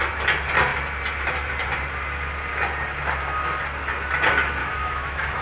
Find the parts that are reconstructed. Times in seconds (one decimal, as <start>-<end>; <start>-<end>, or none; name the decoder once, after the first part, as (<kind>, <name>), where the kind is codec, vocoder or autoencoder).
4.6-5.4 (autoencoder, DAC-VAE)